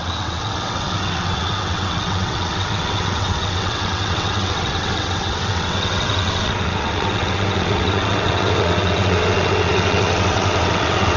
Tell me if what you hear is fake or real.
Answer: fake